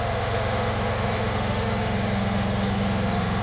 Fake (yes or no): yes